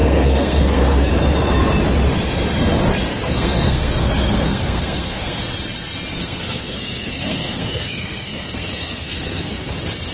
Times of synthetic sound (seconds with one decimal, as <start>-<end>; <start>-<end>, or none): 0.0-1.1; 3.1-5.4; 6.2-9.7